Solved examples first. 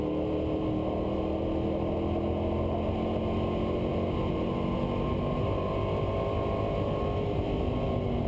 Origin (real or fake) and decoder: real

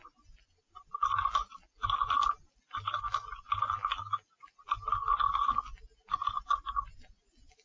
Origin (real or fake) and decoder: real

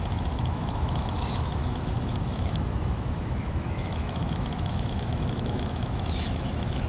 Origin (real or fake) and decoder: fake, autoencoder, DAC-VAE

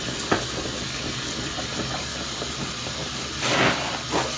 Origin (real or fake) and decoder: real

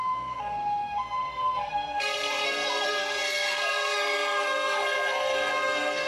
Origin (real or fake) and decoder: fake, codec, SNAC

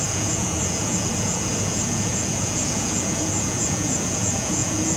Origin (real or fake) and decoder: fake, vocoder, Vocos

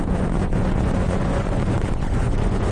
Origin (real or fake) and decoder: fake, vocoder, Vocos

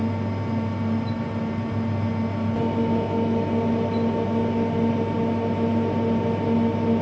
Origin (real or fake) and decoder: real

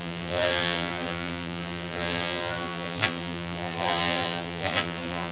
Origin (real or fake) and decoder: fake, vocoder, BigVGAN v2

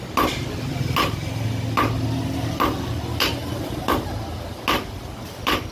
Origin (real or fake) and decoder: real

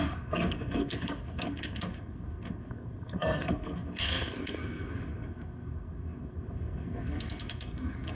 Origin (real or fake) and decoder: fake, codec, SNAC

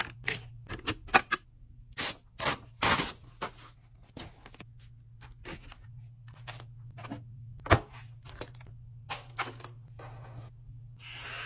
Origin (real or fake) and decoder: real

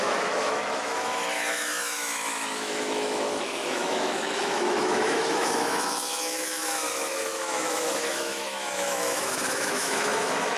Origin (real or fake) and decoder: fake, autoencoder, DAC-VAE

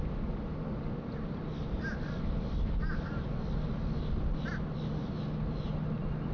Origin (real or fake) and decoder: real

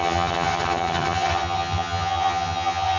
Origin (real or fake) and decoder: fake, vocoder, HiFi-GAN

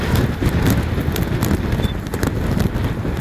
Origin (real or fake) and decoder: real